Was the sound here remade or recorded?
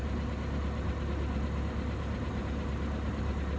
recorded